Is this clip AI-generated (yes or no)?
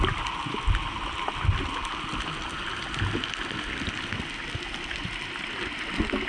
no